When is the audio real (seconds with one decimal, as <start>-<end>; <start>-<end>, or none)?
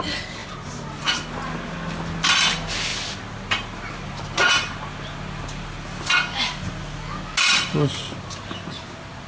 0.0-9.3